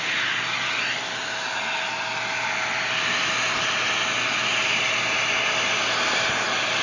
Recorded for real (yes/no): yes